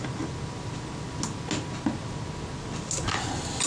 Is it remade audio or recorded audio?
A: recorded